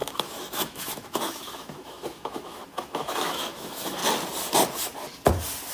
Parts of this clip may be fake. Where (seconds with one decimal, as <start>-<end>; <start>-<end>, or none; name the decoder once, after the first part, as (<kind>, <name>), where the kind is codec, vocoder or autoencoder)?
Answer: 0.0-4.0 (autoencoder, DAC-VAE)